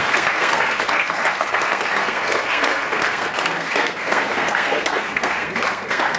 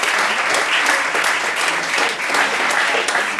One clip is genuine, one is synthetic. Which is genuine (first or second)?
second